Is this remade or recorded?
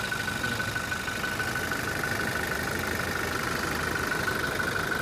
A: recorded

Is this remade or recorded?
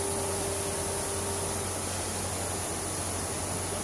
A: recorded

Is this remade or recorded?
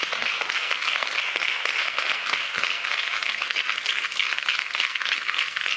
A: remade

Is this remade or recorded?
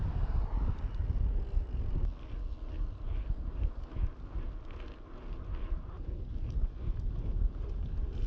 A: recorded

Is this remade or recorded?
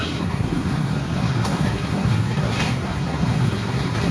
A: remade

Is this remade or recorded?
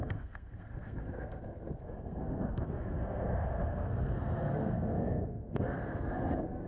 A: remade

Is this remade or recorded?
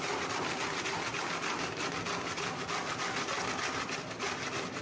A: recorded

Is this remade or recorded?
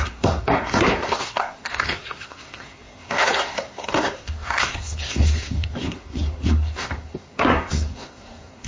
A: remade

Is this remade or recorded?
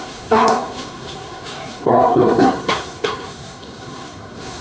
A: remade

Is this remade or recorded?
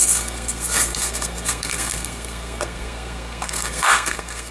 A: remade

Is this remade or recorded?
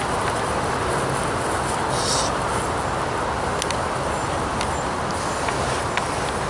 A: recorded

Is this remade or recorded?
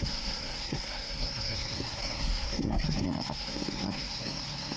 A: remade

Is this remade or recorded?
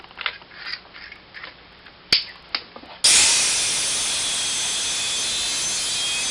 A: recorded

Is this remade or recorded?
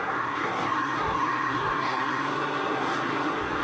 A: remade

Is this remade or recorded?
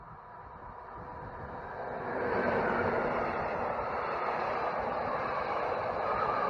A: recorded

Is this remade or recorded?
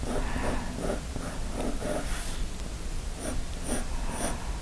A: recorded